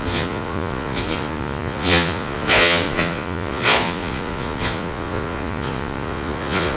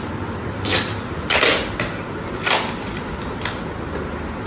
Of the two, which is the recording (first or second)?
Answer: second